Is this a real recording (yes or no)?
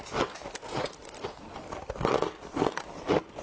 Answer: yes